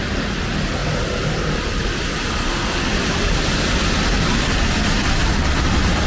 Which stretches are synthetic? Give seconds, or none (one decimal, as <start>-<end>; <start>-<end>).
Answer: none